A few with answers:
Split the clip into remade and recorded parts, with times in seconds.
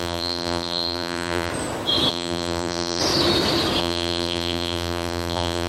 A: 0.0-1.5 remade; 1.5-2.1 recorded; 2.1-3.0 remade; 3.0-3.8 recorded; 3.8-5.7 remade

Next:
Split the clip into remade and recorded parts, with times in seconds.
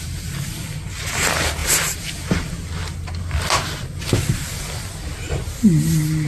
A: 0.0-6.3 recorded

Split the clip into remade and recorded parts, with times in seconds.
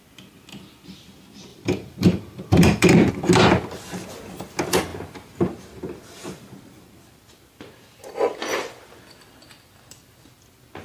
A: 0.0-1.5 recorded; 1.5-3.1 remade; 3.1-10.8 recorded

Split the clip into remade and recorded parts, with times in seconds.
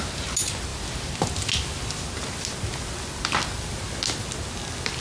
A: 0.0-5.0 recorded